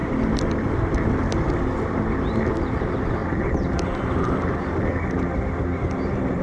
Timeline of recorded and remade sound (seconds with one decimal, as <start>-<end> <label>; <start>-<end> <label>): 0.0-6.4 recorded